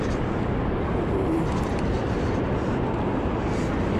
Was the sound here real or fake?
real